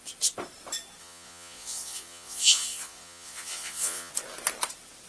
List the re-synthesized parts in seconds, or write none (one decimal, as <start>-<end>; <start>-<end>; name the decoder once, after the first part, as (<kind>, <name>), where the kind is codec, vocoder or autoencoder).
1.0-4.1 (vocoder, Vocos)